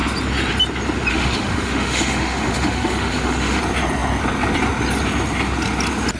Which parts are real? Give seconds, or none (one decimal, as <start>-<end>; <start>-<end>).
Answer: 0.0-1.1; 3.6-6.2